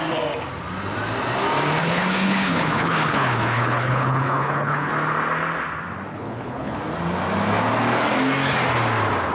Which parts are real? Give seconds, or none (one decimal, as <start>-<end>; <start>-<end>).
0.0-1.8; 4.9-6.1; 6.8-9.3